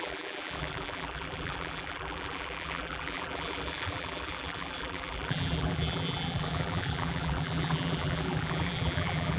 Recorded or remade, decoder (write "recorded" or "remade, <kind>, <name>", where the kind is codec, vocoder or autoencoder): remade, vocoder, BigVGAN v2